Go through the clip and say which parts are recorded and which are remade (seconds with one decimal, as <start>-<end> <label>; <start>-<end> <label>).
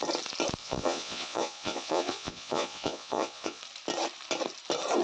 0.0-0.6 recorded; 0.6-3.6 remade; 3.6-5.0 recorded